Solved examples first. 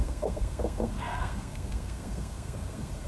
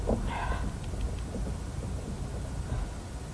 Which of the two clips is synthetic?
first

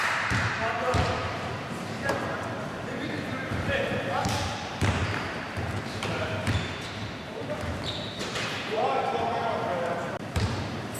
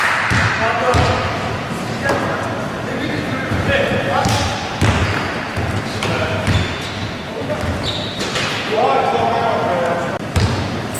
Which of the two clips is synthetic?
first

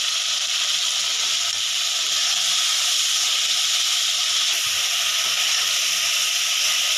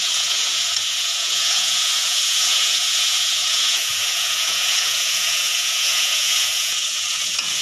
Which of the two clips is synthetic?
second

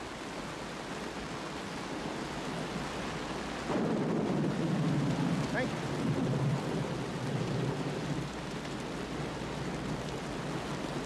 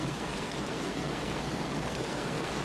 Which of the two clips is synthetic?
second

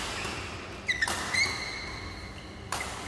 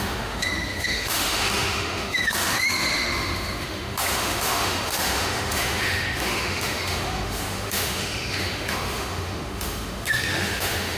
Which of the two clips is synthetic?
second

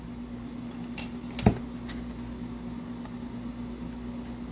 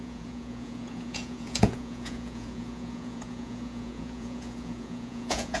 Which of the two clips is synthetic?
second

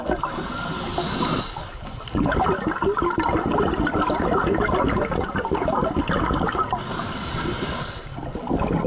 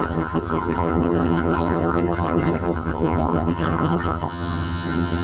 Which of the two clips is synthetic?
second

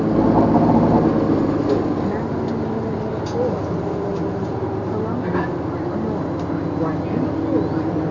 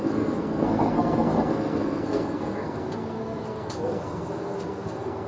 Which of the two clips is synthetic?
second